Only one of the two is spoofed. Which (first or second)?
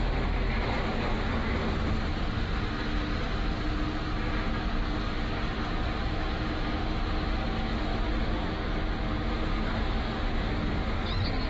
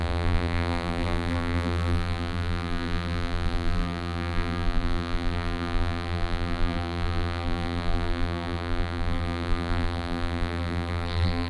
second